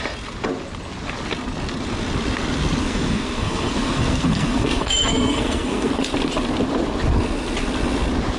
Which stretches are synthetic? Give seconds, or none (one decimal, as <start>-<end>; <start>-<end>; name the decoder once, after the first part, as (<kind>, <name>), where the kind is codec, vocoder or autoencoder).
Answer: 2.8-5.9 (codec, SNAC)